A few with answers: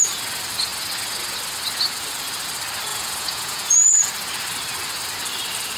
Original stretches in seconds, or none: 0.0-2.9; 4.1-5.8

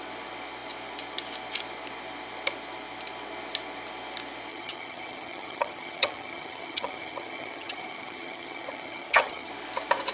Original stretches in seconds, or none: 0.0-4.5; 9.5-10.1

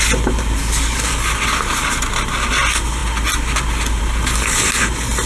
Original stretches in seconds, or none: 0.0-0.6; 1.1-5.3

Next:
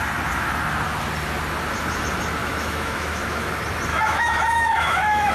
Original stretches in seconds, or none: 0.0-2.4; 3.5-3.9